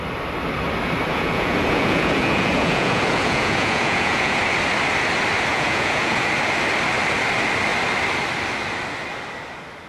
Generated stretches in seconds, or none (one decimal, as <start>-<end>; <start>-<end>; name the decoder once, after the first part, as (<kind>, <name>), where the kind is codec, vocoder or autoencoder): 1.1-4.4 (vocoder, Vocos); 5.5-6.3

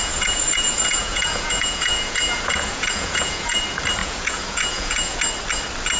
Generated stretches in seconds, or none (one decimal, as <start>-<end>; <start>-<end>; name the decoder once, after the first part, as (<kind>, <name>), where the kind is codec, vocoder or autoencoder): 0.0-3.6 (vocoder, Vocos); 4.0-5.2

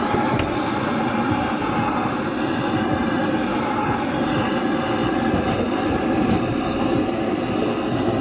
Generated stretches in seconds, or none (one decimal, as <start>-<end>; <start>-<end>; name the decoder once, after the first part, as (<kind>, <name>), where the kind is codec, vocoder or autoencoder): none

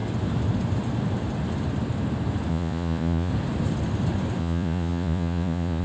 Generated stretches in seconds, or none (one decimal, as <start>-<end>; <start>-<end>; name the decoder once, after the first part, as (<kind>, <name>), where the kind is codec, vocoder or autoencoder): 2.5-3.3 (vocoder, Vocos); 4.4-5.8

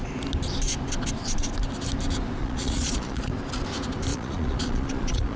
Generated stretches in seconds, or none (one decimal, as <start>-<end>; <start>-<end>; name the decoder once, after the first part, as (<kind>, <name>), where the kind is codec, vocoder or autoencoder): 2.4-3.3 (vocoder, Vocos); 4.1-5.4